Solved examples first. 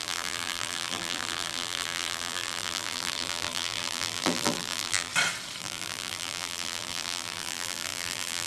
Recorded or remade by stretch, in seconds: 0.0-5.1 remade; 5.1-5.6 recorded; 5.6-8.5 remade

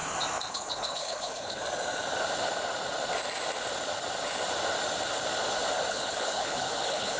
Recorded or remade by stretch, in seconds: 0.0-0.5 recorded; 0.5-1.6 remade; 1.6-5.9 recorded; 5.9-7.2 remade

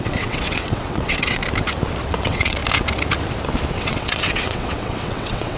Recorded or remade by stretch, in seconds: 0.0-1.4 remade; 1.4-2.1 recorded; 2.1-2.6 remade; 2.6-3.7 recorded; 3.7-5.6 remade